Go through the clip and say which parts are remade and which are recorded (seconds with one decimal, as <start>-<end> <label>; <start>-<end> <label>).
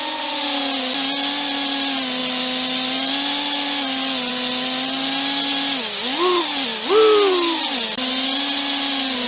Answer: 0.0-9.3 recorded